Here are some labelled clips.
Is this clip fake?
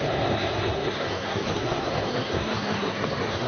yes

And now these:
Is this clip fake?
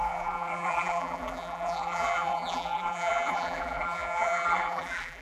yes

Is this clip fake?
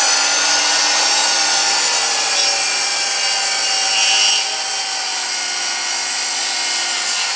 no